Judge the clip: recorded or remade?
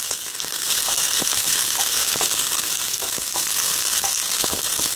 remade